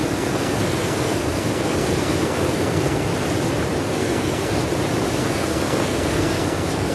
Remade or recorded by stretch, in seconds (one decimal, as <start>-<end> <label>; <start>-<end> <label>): 0.0-3.1 remade; 3.1-3.8 recorded; 3.8-4.6 remade; 4.6-5.2 recorded; 5.2-6.9 remade

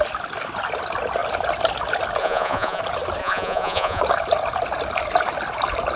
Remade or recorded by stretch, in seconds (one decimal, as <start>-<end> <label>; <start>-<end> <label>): 0.0-2.2 recorded; 2.2-2.8 remade; 2.8-3.2 recorded; 3.2-4.0 remade; 4.0-6.0 recorded

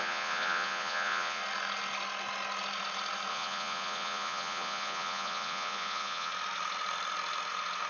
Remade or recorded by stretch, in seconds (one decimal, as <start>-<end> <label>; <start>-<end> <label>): 0.0-1.4 remade; 1.4-3.3 recorded; 3.3-6.3 remade; 6.3-7.9 recorded

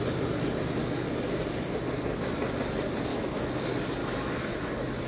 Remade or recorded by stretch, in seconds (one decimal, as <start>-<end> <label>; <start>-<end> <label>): 0.0-0.8 recorded; 0.8-1.4 remade; 1.4-3.1 recorded; 3.1-3.6 remade; 3.6-4.0 recorded; 4.0-5.1 remade

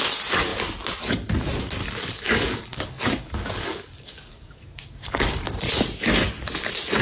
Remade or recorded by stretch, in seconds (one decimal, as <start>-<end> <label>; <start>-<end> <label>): 0.0-1.8 recorded; 1.8-5.7 remade; 5.7-7.0 recorded